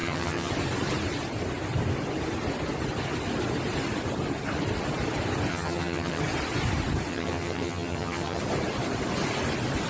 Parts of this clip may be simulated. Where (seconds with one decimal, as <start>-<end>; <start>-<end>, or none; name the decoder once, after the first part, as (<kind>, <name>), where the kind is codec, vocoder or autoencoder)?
0.0-0.5 (vocoder, HiFi-GAN); 5.5-6.2; 7.1-8.4